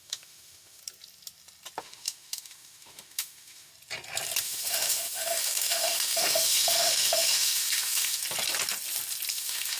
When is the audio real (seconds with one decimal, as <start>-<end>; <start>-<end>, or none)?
0.8-1.8; 3.7-4.4; 8.2-9.3